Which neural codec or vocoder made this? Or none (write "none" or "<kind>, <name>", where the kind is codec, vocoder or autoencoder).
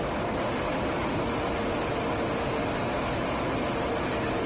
vocoder, BigVGAN v2